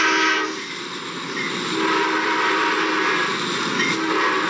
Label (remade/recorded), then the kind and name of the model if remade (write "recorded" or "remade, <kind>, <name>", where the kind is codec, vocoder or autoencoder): recorded